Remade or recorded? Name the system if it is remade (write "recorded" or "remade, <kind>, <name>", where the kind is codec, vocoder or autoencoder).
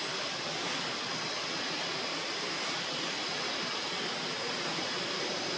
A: recorded